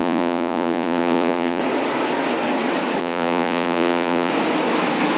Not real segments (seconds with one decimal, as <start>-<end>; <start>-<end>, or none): 0.0-1.6; 3.0-4.3